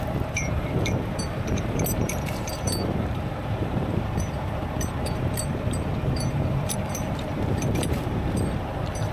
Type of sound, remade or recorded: remade